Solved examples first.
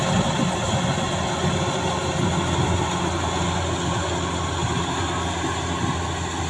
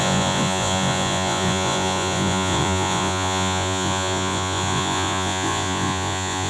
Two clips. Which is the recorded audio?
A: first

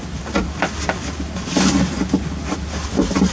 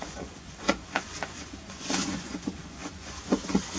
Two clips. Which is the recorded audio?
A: first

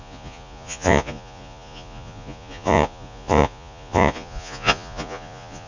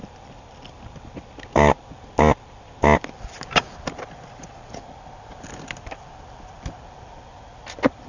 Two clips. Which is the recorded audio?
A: second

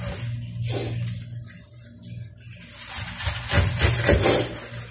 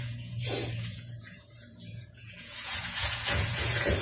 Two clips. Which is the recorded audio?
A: first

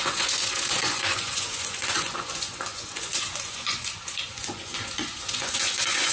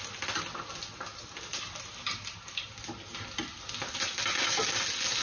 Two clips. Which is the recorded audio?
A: second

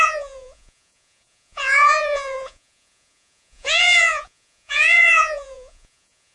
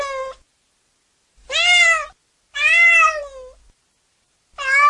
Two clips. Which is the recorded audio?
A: second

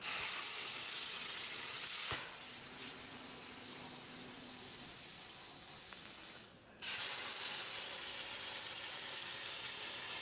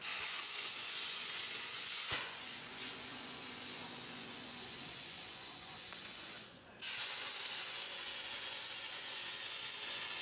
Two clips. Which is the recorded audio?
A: first